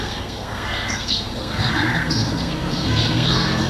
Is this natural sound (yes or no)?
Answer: no